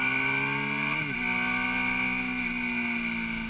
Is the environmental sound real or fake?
real